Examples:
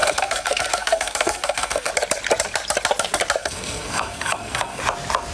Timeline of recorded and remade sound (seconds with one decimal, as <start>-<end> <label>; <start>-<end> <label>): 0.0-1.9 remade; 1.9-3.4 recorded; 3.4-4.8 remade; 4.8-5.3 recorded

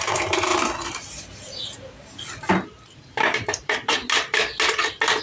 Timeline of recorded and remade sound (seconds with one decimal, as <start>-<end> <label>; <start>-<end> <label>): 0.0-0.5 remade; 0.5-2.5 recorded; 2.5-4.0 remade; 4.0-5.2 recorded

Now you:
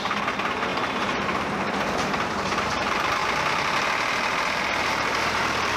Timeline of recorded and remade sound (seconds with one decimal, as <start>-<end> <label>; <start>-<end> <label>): 0.0-3.2 remade; 3.2-4.8 recorded; 4.8-5.8 remade